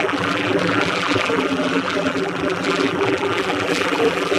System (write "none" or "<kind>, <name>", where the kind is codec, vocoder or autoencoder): vocoder, BigVGAN v2